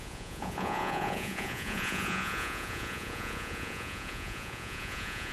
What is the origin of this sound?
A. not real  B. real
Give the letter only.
A